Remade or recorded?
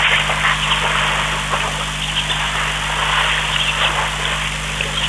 recorded